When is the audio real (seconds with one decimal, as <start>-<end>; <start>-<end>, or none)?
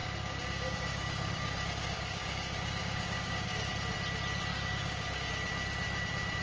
3.7-4.5; 5.3-6.4